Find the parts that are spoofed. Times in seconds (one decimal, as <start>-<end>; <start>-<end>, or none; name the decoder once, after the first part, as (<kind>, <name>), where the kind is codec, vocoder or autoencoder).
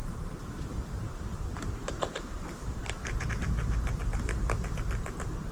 0.0-3.3 (vocoder, BigVGAN v2)